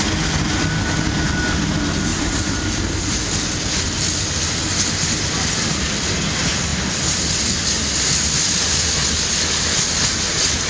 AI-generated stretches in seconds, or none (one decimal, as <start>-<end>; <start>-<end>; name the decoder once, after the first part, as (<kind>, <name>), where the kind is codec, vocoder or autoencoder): 2.1-3.3 (vocoder, BigVGAN v2)